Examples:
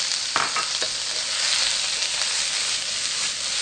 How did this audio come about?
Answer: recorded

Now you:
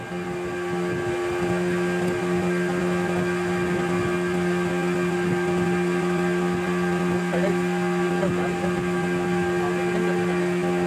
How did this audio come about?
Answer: recorded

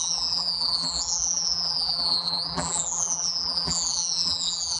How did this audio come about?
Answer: remade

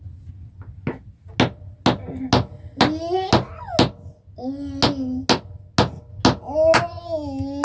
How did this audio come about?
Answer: recorded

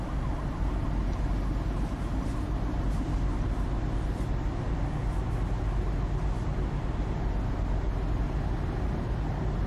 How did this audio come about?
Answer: recorded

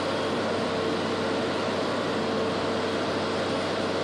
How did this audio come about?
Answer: recorded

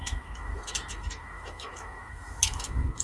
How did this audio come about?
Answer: remade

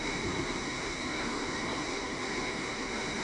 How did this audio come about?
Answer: remade